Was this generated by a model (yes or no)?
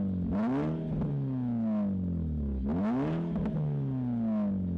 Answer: no